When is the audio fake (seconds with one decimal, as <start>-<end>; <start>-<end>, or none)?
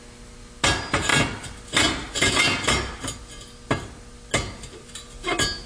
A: none